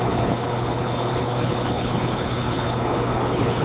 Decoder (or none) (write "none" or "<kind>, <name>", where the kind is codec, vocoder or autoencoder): codec, HILCodec